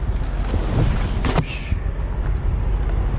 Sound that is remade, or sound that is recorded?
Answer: recorded